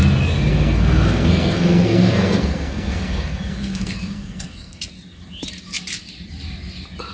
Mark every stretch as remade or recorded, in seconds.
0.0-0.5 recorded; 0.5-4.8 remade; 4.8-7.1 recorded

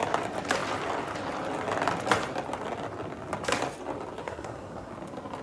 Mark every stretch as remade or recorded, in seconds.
0.0-4.2 recorded; 4.2-4.9 remade; 4.9-5.4 recorded

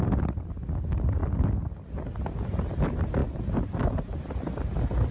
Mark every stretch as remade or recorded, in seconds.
0.0-5.1 recorded

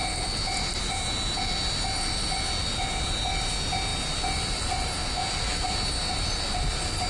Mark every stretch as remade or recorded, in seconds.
0.0-7.1 recorded

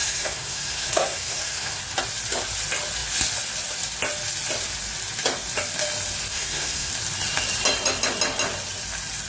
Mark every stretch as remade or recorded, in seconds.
0.0-1.8 remade; 1.8-6.3 recorded; 6.3-6.9 remade; 6.9-9.3 recorded

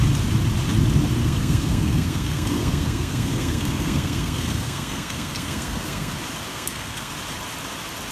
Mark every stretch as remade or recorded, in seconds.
0.0-1.2 recorded; 1.2-6.1 remade; 6.1-6.5 recorded; 6.5-7.1 remade; 7.1-8.1 recorded

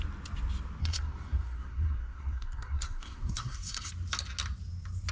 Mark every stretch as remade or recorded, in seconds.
0.0-0.8 recorded; 0.8-3.9 remade; 3.9-5.1 recorded